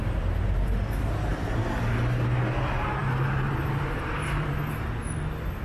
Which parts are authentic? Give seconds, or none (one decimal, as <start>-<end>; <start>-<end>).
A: 0.0-1.3; 2.5-3.0; 4.5-5.6